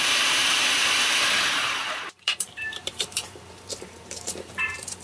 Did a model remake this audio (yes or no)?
yes